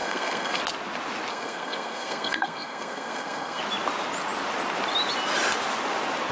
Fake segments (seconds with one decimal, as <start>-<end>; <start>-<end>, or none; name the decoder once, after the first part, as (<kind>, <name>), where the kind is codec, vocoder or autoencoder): 0.0-0.6 (codec, SNAC); 1.3-3.6